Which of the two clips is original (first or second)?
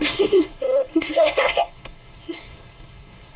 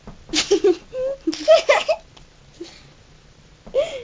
second